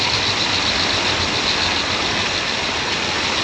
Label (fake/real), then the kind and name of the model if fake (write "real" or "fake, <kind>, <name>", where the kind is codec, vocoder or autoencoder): real